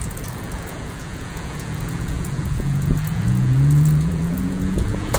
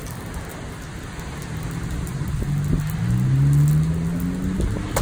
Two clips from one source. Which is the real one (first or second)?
second